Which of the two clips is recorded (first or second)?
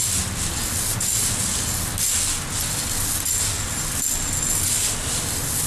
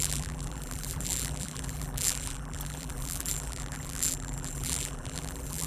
first